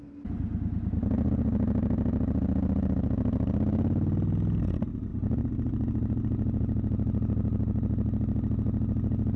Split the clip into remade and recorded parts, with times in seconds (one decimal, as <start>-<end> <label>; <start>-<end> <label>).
0.0-9.4 recorded